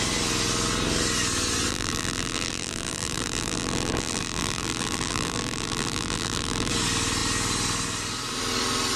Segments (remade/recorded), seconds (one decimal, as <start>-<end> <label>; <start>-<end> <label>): 0.0-1.7 recorded; 1.7-6.7 remade; 6.7-9.0 recorded